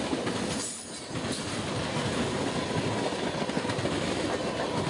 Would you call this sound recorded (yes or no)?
yes